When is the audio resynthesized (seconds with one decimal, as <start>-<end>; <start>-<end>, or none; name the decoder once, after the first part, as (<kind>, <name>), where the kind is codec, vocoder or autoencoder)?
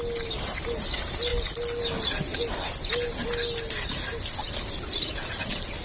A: none